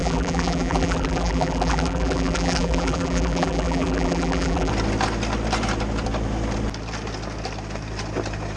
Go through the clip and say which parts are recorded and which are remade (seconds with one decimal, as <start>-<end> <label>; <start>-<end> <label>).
0.0-4.7 remade; 4.7-8.6 recorded